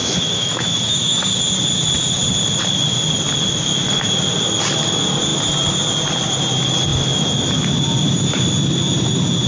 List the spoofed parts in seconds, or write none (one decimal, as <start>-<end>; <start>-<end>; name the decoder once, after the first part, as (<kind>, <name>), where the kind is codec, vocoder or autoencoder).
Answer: 0.0-1.3 (autoencoder, DAC-VAE)